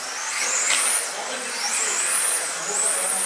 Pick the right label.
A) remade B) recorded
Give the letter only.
B